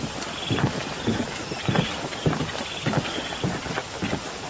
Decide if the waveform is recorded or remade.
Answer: recorded